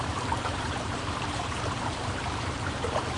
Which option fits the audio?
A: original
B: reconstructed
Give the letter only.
B